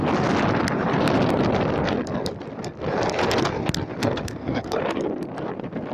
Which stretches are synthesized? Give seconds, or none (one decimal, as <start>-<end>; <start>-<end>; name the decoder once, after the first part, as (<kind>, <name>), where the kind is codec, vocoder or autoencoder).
4.0-4.8 (codec, SNAC)